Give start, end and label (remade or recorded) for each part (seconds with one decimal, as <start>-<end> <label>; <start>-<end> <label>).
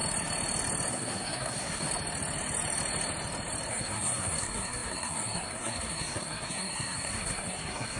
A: 0.0-0.9 recorded; 0.9-1.9 remade; 1.9-3.7 recorded; 3.7-8.0 remade